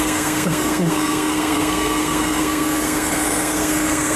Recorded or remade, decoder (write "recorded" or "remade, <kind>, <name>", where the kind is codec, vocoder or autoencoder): remade, codec, SNAC